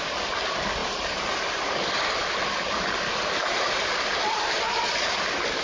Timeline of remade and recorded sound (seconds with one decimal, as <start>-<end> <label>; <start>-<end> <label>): 0.0-0.8 recorded; 0.8-1.3 remade; 1.3-5.6 recorded